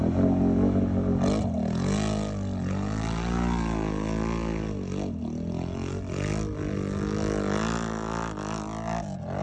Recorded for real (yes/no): yes